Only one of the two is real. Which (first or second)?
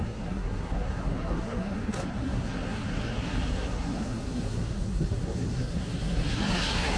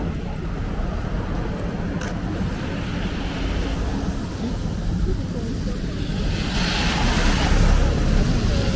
second